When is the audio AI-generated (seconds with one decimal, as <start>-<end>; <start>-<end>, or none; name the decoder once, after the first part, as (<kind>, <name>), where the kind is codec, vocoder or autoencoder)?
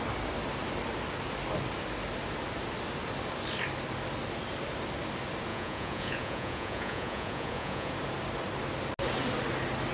5.5-7.9 (vocoder, Vocos)